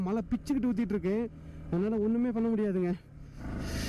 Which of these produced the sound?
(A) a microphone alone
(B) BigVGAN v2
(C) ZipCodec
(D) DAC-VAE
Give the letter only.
A